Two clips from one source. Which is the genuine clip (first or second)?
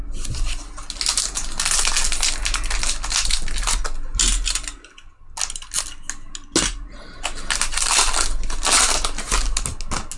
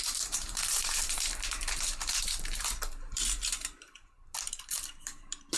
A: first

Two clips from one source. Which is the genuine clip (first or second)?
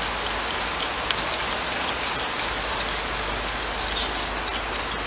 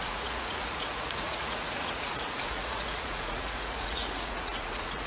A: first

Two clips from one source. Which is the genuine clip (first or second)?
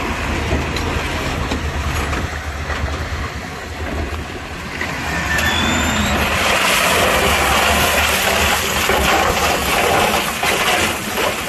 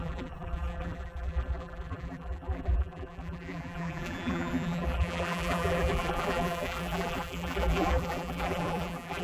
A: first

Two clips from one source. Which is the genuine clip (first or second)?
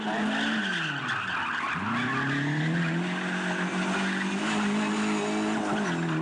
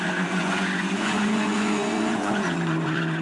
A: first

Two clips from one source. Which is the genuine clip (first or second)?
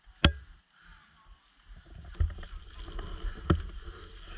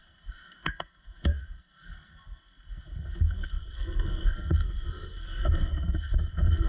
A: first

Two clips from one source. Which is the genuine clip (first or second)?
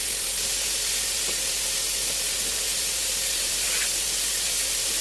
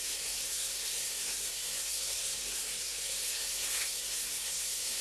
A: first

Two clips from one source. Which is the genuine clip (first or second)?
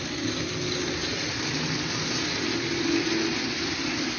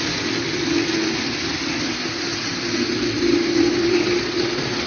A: first